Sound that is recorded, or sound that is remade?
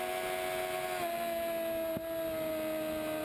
recorded